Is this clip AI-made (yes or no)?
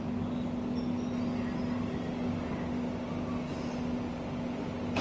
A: no